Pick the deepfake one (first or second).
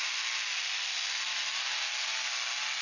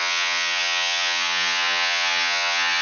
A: second